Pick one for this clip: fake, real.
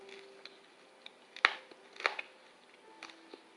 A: real